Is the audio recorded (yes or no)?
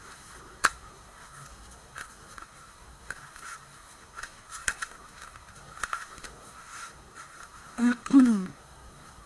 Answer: no